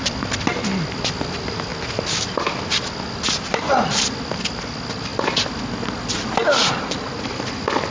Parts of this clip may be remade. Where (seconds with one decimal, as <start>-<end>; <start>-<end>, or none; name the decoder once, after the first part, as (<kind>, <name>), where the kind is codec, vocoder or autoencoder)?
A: none